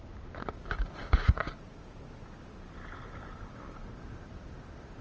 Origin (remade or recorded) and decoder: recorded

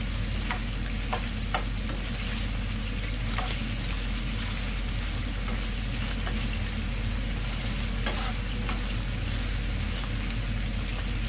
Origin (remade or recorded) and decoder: recorded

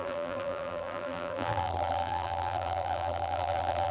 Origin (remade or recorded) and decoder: remade, vocoder, BigVGAN v2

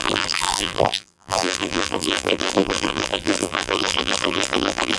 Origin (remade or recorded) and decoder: remade, vocoder, BigVGAN v2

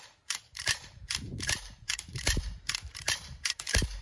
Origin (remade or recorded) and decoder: remade, vocoder, BigVGAN v2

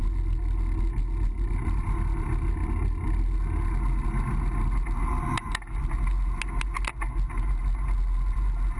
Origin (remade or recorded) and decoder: recorded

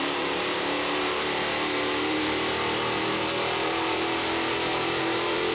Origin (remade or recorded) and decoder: remade, vocoder, BigVGAN v2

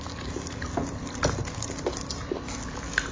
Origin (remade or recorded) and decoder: recorded